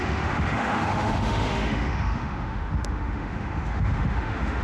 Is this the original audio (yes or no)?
no